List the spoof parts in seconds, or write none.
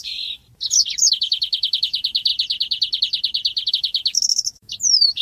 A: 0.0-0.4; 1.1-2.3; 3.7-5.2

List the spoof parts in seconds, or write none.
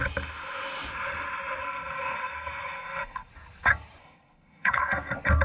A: 1.6-3.3; 4.0-4.8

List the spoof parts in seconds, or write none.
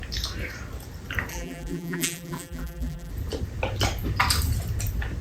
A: 1.3-3.1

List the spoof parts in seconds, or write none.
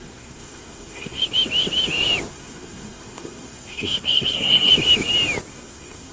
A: 0.0-1.2; 2.3-4.7; 5.5-6.1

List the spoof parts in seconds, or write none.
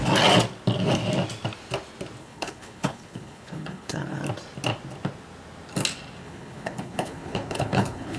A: 2.2-4.2; 6.2-8.2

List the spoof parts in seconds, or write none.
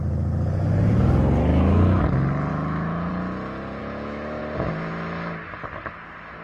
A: 1.5-2.0; 2.5-3.1; 3.8-4.4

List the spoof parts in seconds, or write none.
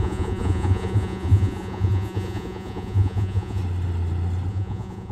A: 0.0-3.6; 4.5-5.1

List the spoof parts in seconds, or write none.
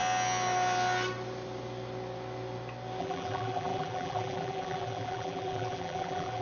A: 3.0-6.4